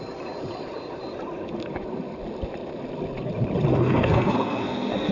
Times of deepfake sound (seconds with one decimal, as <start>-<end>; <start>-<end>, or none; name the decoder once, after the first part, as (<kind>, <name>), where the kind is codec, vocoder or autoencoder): 3.7-5.1 (codec, SNAC)